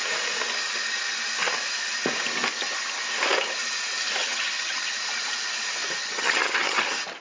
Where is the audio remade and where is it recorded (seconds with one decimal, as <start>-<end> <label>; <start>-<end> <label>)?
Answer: 0.0-4.2 recorded; 4.2-5.0 remade; 5.0-6.0 recorded; 6.0-6.8 remade; 6.8-7.2 recorded